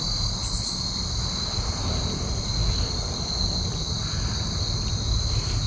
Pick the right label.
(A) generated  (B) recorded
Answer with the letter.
B